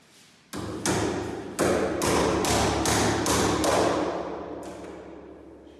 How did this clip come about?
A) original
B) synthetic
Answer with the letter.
A